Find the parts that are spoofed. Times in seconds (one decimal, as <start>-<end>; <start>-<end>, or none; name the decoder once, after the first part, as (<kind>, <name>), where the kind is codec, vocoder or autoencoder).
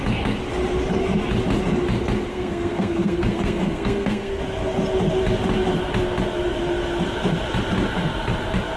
2.3-4.4 (codec, SNAC)